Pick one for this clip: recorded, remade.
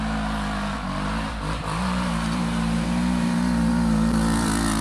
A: remade